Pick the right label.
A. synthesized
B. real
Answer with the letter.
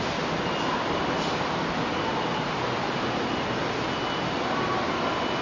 B